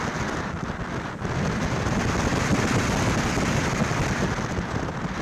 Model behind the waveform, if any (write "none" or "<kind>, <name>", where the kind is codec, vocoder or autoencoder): none